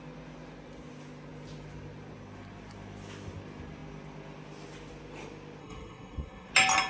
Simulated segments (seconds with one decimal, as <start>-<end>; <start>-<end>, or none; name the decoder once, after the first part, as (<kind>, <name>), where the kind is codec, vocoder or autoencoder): 5.6-6.5 (codec, SNAC)